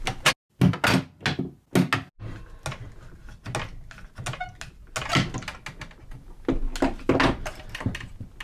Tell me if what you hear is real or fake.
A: real